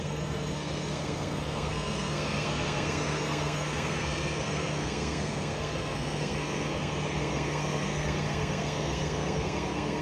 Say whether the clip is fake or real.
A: fake